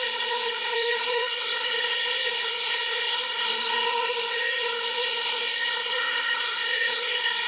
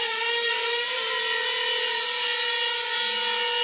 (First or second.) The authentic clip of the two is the second